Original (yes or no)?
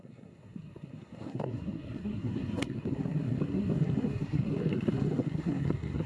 no